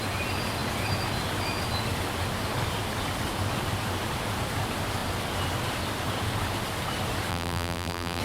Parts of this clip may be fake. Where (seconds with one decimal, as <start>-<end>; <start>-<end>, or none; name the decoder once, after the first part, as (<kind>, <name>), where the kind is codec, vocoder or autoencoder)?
7.3-8.2 (vocoder, BigVGAN v2)